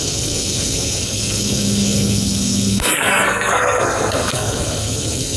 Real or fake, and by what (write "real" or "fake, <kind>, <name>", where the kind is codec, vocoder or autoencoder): fake, codec, SNAC